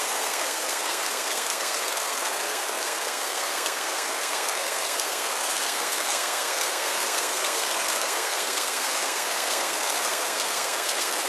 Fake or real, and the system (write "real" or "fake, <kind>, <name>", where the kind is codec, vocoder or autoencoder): fake, codec, SNAC